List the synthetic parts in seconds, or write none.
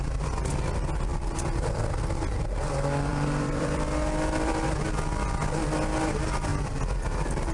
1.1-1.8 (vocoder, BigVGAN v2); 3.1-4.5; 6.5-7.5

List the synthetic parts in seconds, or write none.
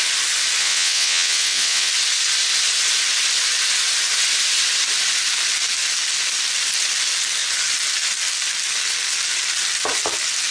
0.6-1.9 (vocoder, WaveNeXt)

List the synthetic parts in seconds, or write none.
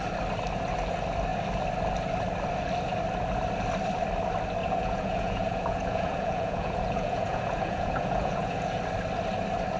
4.6-8.8 (vocoder, Vocos)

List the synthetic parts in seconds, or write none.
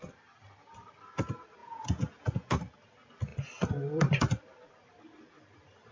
1.6-2.5 (vocoder, Vocos)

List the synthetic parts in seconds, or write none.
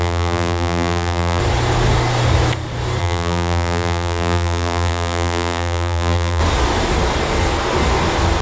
0.0-1.4 (vocoder, BigVGAN v2); 3.0-6.4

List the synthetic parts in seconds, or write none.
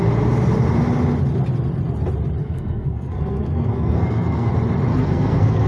2.4-4.5 (codec, SNAC); 4.9-5.7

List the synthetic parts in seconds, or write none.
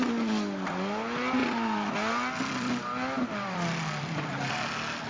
1.4-4.5 (vocoder, BigVGAN v2)